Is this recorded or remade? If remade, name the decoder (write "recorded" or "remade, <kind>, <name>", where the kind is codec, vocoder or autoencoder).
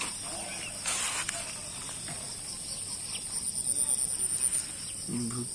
recorded